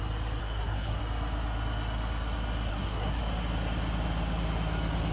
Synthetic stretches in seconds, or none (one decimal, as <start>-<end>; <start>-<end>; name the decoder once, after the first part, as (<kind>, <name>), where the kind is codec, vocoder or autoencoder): 0.4-1.0 (codec, SNAC); 2.7-3.2